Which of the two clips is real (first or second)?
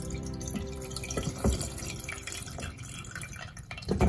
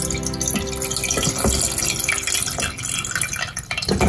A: second